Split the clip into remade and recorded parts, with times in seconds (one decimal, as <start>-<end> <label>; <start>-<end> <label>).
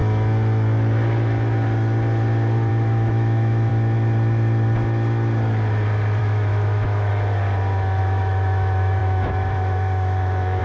0.0-2.7 recorded; 2.7-3.7 remade; 3.7-6.2 recorded; 6.2-7.1 remade; 7.1-8.0 recorded; 8.0-10.6 remade